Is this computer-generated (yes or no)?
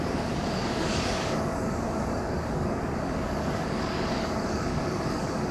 yes